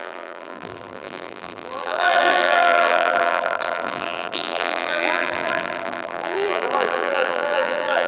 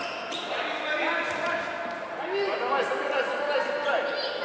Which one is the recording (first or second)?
second